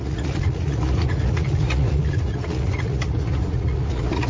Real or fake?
fake